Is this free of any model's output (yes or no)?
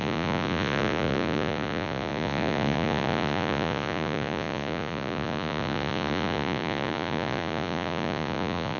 no